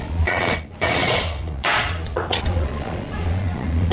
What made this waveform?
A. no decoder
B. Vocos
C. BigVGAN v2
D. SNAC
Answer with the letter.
B